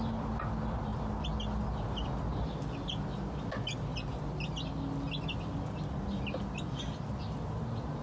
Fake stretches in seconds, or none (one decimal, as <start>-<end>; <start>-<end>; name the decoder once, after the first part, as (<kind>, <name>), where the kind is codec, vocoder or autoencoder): none